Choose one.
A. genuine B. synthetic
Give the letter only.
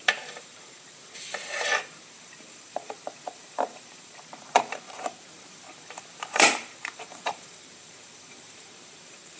B